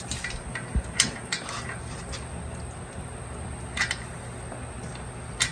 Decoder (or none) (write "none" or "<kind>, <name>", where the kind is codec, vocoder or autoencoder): none